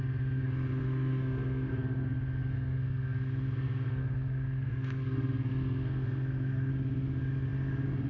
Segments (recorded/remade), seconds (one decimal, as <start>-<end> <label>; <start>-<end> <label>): 0.0-0.8 recorded; 0.8-1.7 remade; 1.7-2.5 recorded; 2.5-6.7 remade; 6.7-8.1 recorded